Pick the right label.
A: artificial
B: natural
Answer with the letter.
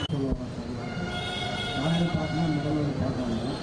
B